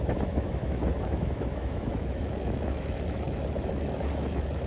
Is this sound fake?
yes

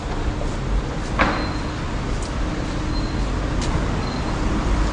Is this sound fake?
no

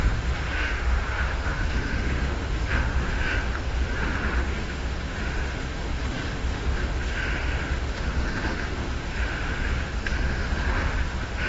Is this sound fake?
yes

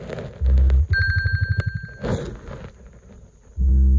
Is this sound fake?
no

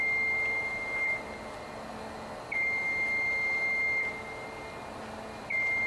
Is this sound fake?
no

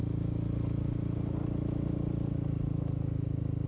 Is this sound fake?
no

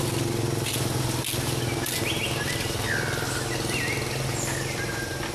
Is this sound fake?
no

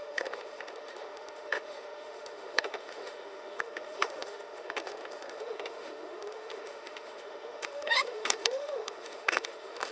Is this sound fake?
yes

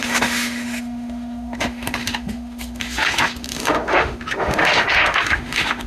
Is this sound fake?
yes